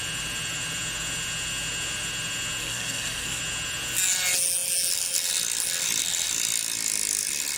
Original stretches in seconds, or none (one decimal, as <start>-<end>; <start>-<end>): 0.0-2.6; 3.4-7.6